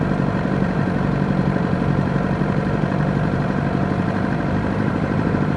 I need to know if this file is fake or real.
fake